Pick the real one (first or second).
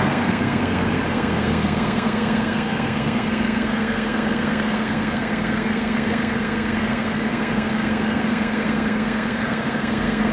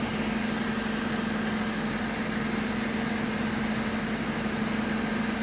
second